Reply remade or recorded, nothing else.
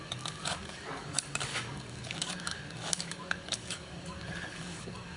remade